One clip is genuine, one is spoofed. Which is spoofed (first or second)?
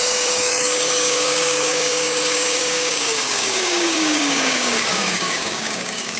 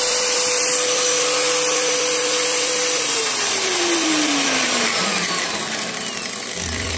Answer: first